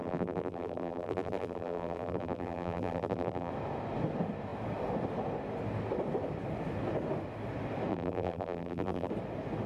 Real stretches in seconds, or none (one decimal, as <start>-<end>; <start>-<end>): 3.5-7.9; 9.1-9.7